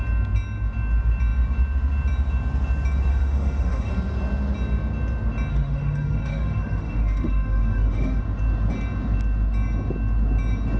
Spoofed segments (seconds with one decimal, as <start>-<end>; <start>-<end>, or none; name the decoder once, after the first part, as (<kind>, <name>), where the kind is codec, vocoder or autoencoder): 3.1-3.9 (autoencoder, DAC-VAE); 5.5-8.2